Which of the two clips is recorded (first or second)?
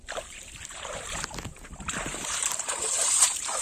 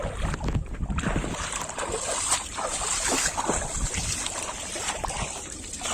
second